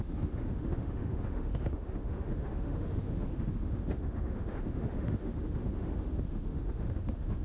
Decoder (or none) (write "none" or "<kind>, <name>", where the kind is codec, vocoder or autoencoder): autoencoder, DAC-VAE